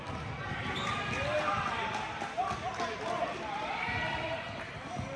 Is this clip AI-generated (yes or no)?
no